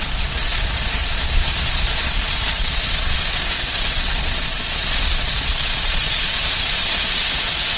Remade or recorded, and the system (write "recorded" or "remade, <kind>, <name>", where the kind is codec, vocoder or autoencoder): remade, vocoder, Vocos